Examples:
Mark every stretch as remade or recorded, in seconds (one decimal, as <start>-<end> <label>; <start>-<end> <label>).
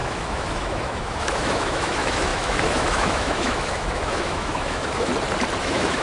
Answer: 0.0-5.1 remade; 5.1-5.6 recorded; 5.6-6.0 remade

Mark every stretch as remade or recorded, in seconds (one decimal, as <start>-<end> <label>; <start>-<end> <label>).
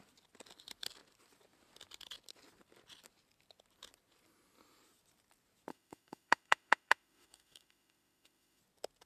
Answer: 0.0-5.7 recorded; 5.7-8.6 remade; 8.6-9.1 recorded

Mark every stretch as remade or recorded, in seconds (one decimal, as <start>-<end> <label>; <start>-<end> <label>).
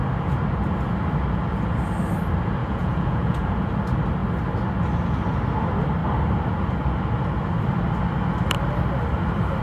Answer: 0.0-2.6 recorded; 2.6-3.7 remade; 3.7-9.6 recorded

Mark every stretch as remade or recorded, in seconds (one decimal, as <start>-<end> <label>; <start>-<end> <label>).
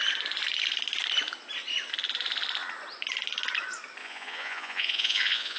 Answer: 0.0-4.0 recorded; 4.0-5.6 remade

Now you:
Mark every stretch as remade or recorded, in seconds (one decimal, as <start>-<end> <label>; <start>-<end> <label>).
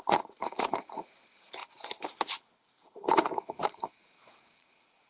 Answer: 0.0-1.6 remade; 1.6-2.4 recorded; 2.4-5.1 remade